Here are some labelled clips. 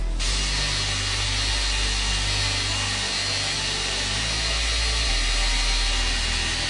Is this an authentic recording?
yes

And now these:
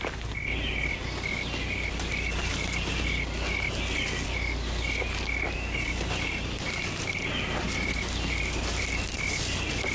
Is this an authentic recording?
yes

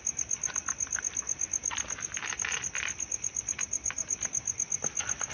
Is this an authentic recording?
yes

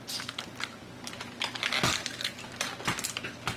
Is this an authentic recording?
yes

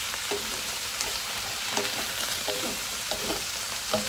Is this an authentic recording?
no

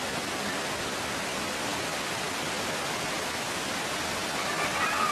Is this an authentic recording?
yes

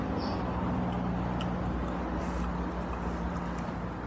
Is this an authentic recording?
yes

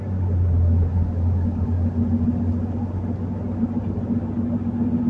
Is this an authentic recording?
yes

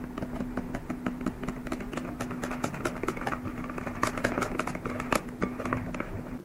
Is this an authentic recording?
yes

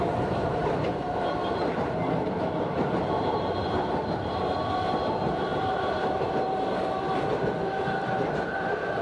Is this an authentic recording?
no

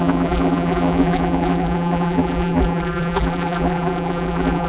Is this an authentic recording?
no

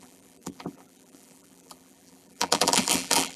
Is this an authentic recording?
no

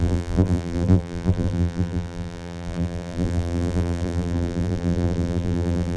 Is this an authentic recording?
no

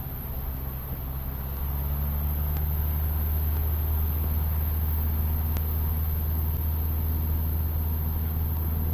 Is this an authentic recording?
yes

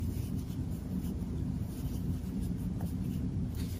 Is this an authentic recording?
no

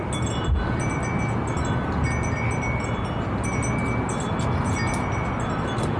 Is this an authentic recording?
yes